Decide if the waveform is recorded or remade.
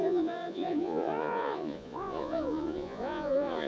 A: remade